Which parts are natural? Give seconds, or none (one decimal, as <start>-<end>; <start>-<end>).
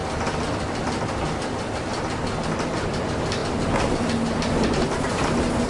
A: 0.0-0.7; 1.9-3.0; 3.4-4.0